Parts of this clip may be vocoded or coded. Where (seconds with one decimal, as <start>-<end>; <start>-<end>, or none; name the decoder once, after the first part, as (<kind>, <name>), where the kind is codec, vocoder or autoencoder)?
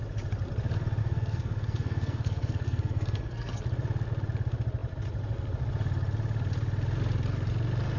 1.0-3.6 (codec, SNAC)